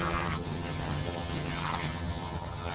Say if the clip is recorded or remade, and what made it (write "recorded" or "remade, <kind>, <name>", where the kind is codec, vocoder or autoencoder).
remade, vocoder, HiFi-GAN